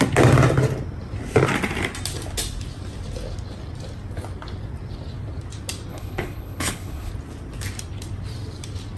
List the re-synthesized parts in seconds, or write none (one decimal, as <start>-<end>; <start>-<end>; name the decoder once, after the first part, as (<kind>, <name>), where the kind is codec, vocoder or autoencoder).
5.9-7.1 (codec, HILCodec)